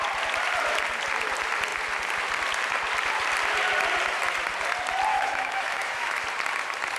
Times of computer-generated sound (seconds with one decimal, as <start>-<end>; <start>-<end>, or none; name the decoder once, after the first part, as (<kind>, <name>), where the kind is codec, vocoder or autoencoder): 5.1-6.2 (autoencoder, DAC-VAE)